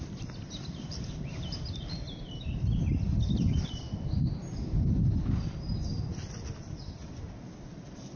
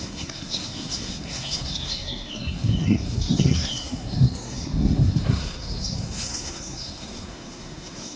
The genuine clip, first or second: first